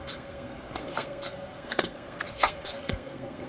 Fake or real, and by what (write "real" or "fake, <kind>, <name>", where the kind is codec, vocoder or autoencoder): fake, codec, SNAC